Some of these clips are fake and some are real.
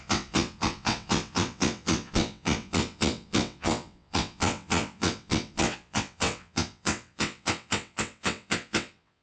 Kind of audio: fake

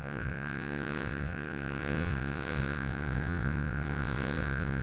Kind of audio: fake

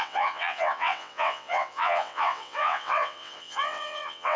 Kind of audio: fake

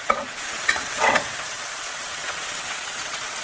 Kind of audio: fake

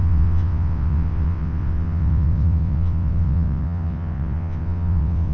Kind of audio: fake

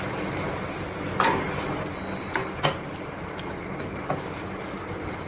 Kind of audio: real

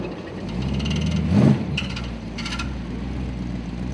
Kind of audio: real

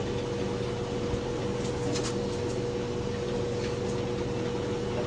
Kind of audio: real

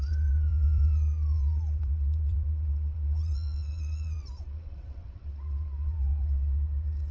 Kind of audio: fake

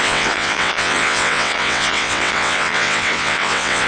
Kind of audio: fake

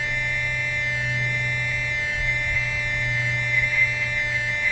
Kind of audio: real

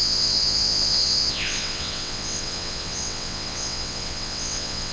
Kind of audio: fake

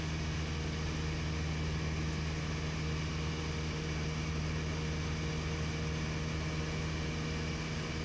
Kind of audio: real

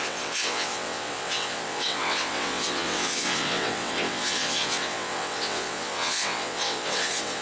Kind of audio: fake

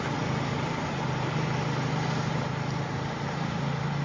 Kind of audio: real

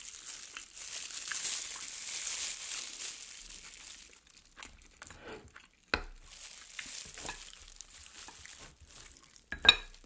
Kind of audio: real